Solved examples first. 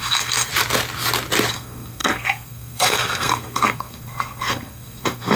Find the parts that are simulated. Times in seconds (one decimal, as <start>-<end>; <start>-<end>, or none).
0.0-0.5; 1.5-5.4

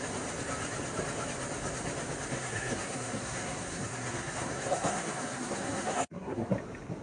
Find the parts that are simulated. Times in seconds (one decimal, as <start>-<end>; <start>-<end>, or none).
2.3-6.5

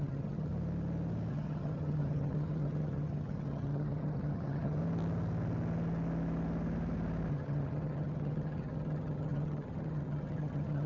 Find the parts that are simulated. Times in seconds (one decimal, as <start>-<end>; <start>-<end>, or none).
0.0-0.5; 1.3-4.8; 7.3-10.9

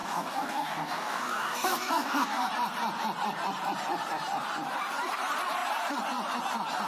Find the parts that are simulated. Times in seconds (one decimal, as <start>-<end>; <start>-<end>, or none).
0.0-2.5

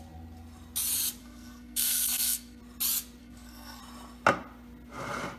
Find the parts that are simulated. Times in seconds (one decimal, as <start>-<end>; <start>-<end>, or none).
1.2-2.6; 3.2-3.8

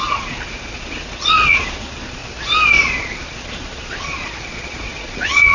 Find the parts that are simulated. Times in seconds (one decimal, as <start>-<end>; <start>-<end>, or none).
0.0-2.2; 3.0-5.5